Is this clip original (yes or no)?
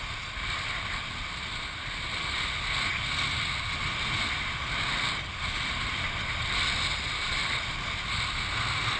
yes